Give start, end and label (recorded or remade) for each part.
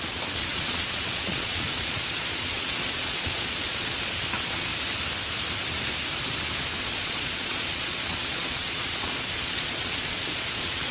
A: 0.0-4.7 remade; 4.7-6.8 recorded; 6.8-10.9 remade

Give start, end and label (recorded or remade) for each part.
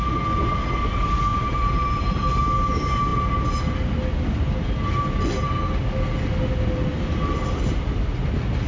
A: 0.0-1.3 recorded; 1.3-2.0 remade; 2.0-8.7 recorded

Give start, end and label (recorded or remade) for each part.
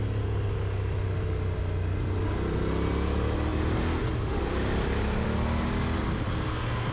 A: 0.0-6.9 recorded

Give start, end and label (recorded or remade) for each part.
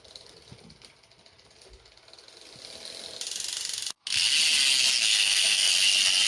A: 0.0-5.0 recorded; 5.0-5.7 remade; 5.7-6.3 recorded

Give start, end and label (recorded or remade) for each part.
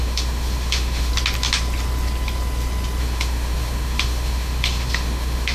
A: 0.0-1.1 remade; 1.1-3.0 recorded; 3.0-5.5 remade